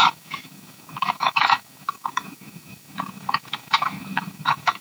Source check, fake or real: fake